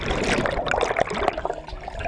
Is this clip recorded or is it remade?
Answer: recorded